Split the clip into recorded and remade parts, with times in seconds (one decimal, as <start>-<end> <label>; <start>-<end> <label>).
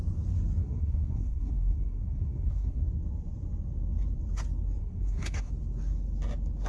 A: 0.0-0.6 recorded; 0.6-2.8 remade; 2.8-4.8 recorded; 4.8-5.5 remade; 5.5-6.7 recorded